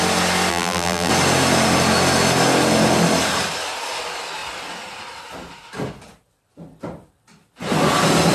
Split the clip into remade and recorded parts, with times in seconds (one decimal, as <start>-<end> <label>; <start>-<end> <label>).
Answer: 0.0-0.5 recorded; 0.5-1.1 remade; 1.1-8.3 recorded